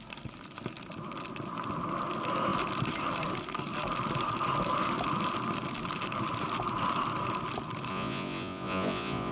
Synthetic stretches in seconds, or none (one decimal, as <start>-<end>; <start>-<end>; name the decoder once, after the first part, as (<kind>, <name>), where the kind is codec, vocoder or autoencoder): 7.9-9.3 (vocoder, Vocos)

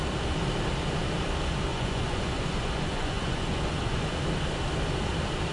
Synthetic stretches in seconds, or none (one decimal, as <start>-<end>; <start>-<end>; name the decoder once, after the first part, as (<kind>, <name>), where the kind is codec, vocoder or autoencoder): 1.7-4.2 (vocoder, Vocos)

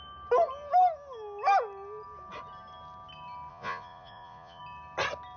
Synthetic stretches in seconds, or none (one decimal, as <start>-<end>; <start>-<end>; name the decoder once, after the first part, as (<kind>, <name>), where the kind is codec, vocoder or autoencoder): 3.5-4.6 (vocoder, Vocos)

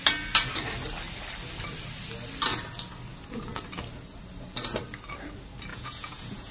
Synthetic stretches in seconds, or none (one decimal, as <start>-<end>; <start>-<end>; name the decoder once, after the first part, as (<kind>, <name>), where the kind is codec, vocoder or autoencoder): 5.7-6.5 (vocoder, Vocos)